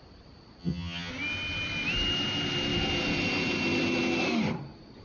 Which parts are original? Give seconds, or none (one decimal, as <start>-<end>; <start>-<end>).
0.0-0.6; 1.1-5.0